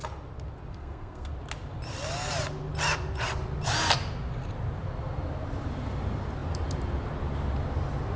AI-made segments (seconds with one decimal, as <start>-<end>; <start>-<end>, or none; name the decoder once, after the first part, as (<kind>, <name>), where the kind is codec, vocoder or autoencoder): 0.7-1.3 (codec, SNAC)